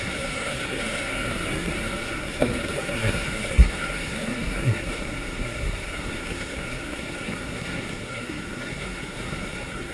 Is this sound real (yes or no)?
no